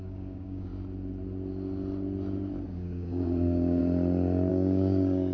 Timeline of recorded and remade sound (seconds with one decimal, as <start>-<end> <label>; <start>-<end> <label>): 0.0-0.7 remade; 0.7-2.7 recorded; 2.7-3.8 remade; 3.8-4.5 recorded; 4.5-5.3 remade